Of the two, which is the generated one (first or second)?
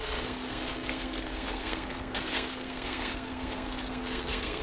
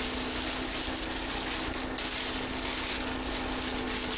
first